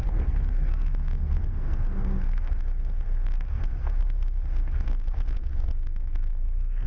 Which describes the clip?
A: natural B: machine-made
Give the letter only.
B